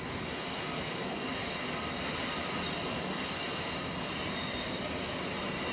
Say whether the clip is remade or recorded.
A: recorded